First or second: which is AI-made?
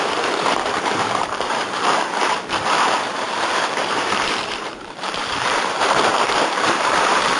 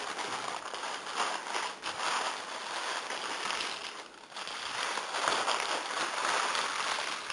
first